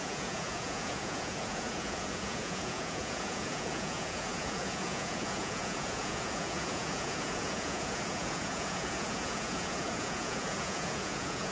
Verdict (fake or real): fake